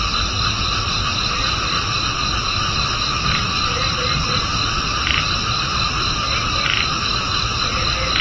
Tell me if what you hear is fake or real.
real